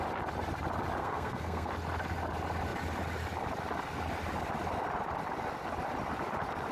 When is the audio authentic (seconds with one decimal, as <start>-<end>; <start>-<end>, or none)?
0.0-1.0; 1.7-6.7